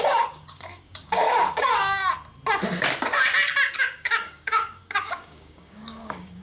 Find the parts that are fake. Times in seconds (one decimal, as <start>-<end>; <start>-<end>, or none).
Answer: 0.0-2.0; 3.8-6.4